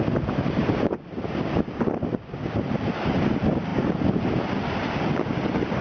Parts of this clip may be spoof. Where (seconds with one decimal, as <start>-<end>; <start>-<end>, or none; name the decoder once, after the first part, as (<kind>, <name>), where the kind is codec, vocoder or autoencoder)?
none